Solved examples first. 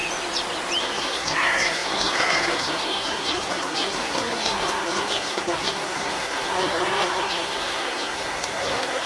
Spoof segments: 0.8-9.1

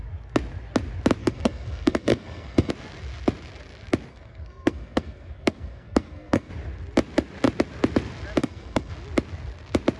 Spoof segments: 1.2-2.7; 4.1-6.5; 8.4-8.9